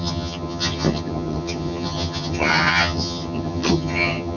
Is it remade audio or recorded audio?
remade